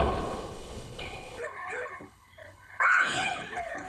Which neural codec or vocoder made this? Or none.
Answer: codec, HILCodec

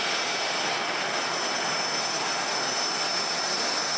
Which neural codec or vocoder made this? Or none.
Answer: none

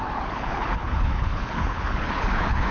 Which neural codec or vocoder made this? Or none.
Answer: codec, HILCodec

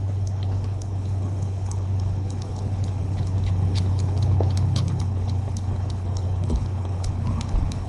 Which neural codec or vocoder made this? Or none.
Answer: codec, HILCodec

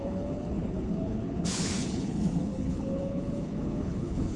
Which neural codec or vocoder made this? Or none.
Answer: codec, HILCodec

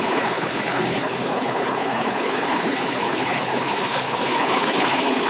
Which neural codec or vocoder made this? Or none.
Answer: codec, HILCodec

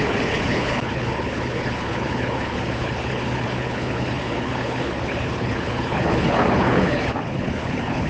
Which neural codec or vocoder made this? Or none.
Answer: codec, HILCodec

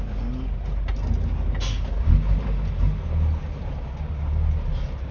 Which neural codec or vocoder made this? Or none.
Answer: none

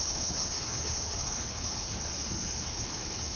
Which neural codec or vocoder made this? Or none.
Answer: codec, HILCodec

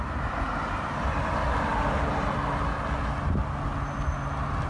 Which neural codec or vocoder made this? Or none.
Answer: none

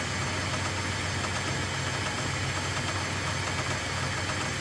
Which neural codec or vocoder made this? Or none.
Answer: none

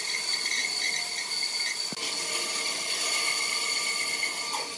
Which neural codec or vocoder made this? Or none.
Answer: none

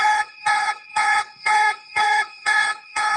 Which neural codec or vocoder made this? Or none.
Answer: codec, HILCodec